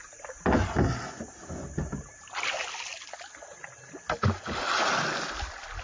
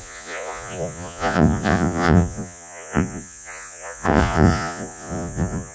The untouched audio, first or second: first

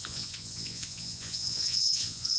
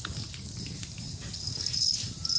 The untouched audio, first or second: second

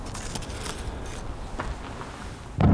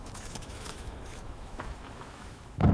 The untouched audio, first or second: first